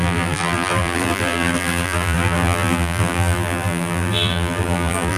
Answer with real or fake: fake